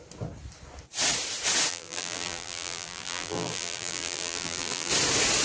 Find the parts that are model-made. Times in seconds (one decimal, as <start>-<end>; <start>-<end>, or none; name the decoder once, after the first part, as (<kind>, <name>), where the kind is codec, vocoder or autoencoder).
1.7-4.9 (vocoder, BigVGAN v2)